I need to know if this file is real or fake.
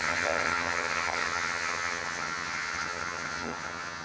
fake